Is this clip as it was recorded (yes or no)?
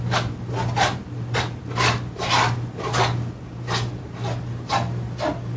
yes